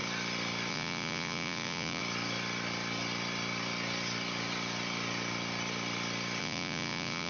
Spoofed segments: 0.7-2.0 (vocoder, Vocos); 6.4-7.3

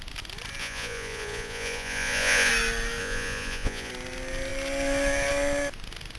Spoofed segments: 0.6-2.5 (vocoder, Vocos); 3.0-3.9

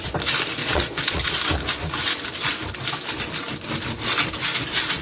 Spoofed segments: 0.6-1.3 (vocoder, Vocos)

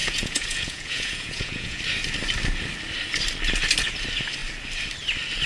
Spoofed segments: 0.0-1.8 (vocoder, Vocos)